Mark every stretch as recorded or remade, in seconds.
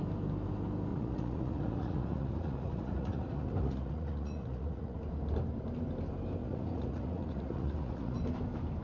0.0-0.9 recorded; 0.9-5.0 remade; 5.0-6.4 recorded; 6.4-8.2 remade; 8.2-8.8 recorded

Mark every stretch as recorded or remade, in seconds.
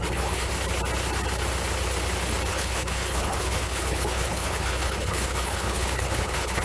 0.0-0.5 remade; 0.5-2.5 recorded; 2.5-6.6 remade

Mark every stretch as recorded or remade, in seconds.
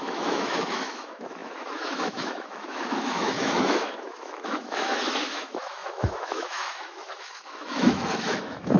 0.0-8.8 remade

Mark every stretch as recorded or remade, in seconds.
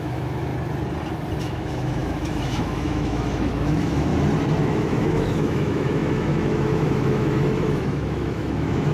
0.0-0.5 remade; 0.5-1.4 recorded; 1.4-4.1 remade; 4.1-4.6 recorded; 4.6-8.9 remade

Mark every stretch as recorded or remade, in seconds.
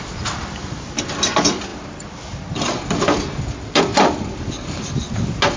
0.0-5.6 recorded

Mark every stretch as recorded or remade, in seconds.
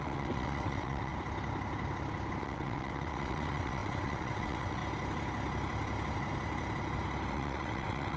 0.0-1.1 remade; 1.1-2.4 recorded; 2.4-4.8 remade; 4.8-7.3 recorded; 7.3-8.2 remade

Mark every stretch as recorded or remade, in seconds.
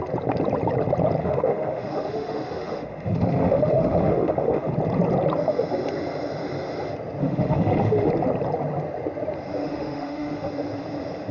0.0-1.2 recorded; 1.2-4.7 remade; 4.7-7.2 recorded; 7.2-8.1 remade; 8.1-9.6 recorded; 9.6-10.5 remade; 10.5-11.3 recorded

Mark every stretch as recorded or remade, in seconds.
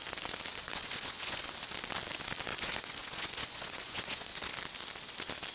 0.0-0.5 recorded; 0.5-1.4 remade; 1.4-2.5 recorded; 2.5-4.5 remade; 4.5-5.5 recorded